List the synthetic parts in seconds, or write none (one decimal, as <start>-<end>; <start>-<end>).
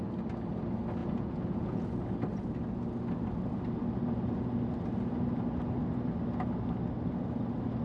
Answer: 1.0-1.9